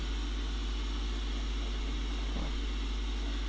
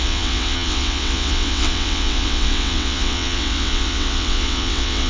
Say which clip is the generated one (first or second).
second